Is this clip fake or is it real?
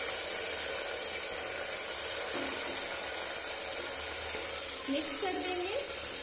real